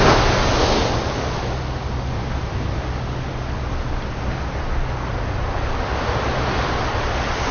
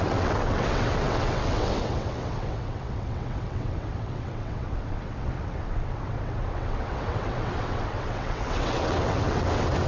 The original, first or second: first